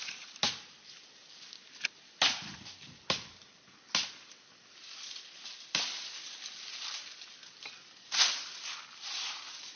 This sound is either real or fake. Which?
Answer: real